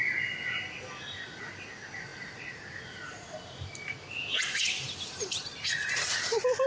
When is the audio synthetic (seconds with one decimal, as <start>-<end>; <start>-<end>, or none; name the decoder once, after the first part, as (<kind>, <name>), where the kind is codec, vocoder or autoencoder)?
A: none